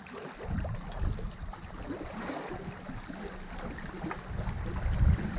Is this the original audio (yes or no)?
yes